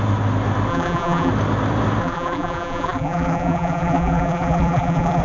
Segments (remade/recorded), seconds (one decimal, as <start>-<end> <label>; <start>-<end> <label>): 0.0-0.7 recorded; 0.7-1.3 remade; 1.3-2.0 recorded; 2.0-5.2 remade